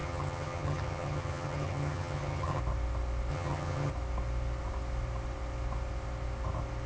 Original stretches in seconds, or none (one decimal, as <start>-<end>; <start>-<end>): 2.6-3.3; 3.9-6.9